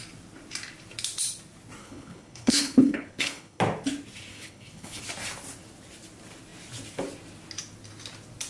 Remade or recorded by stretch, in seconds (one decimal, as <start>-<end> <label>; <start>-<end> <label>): 0.0-1.8 recorded; 1.8-3.6 remade; 3.6-4.3 recorded; 4.3-5.0 remade; 5.0-8.5 recorded